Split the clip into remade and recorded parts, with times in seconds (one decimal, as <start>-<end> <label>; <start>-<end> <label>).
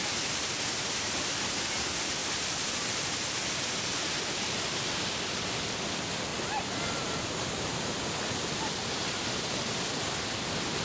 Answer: 0.0-10.8 recorded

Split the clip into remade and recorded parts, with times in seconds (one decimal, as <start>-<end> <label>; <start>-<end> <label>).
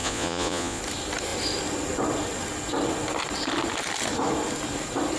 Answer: 0.0-0.8 remade; 0.8-5.2 recorded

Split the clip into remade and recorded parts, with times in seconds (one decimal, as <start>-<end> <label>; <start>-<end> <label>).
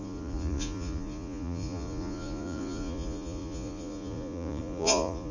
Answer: 0.0-5.3 remade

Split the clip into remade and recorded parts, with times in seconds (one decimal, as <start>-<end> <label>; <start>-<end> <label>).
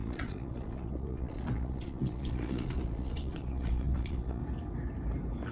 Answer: 0.0-4.4 remade; 4.4-5.5 recorded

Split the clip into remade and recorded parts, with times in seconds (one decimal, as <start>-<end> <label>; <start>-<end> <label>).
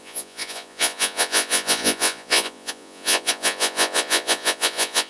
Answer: 0.0-5.1 remade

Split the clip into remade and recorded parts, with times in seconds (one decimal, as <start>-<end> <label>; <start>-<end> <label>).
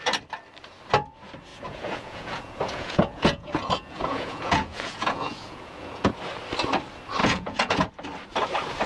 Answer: 0.0-1.5 recorded; 1.5-6.1 remade; 6.1-7.2 recorded; 7.2-7.9 remade; 7.9-8.9 recorded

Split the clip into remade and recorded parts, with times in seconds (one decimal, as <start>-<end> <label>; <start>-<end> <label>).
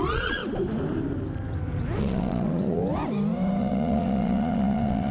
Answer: 0.0-0.4 remade; 0.4-2.0 recorded; 2.0-2.8 remade; 2.8-3.6 recorded; 3.6-5.1 remade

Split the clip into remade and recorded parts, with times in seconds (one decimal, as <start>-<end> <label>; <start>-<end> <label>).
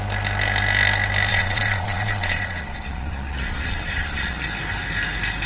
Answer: 0.0-1.3 recorded; 1.3-4.5 remade; 4.5-5.5 recorded